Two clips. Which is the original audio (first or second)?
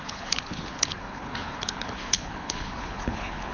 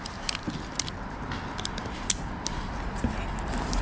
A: second